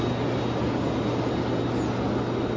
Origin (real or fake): real